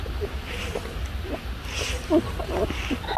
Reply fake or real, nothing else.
real